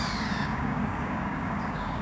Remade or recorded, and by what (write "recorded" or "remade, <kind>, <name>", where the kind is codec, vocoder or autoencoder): remade, codec, DAC